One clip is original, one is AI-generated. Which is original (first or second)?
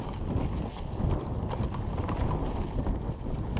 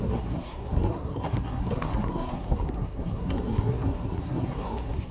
first